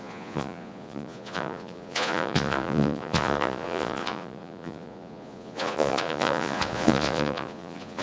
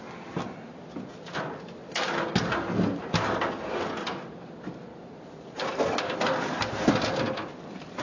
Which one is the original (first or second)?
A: second